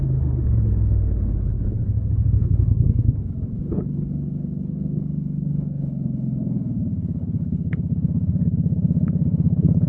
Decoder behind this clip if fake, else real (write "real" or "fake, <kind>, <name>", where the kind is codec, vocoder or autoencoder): fake, codec, HILCodec